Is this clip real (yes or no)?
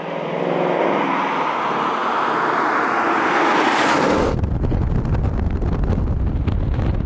yes